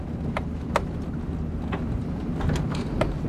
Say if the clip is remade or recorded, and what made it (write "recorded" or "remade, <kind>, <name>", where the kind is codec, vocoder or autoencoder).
recorded